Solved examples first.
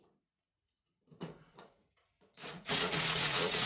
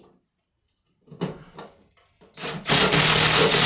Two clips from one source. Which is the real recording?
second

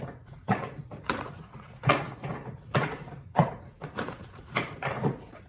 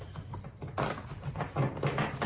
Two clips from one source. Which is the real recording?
second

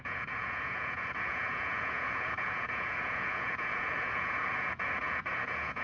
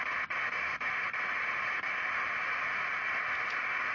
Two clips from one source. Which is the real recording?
second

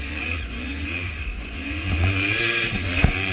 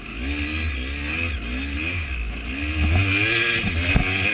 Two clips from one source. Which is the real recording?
second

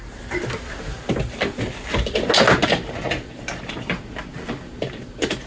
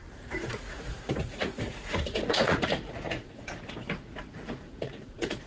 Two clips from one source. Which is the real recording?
first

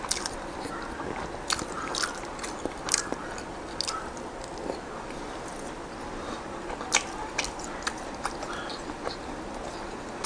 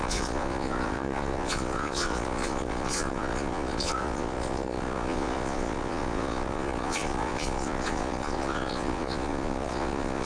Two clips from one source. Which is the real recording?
first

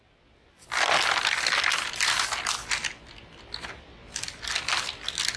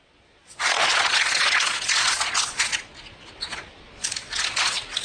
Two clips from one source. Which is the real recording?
first